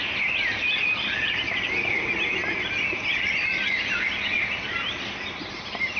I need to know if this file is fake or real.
fake